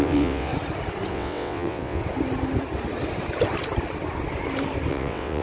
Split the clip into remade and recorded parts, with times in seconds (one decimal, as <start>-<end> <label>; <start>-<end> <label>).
0.0-0.5 remade; 0.5-1.1 recorded; 1.1-2.0 remade; 2.0-4.9 recorded; 4.9-5.4 remade